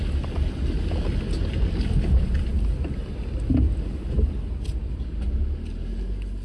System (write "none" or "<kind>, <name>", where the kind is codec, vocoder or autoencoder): none